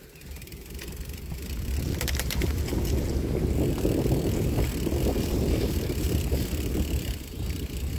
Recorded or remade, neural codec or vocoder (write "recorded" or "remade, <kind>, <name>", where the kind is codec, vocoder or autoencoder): remade, vocoder, BigVGAN v2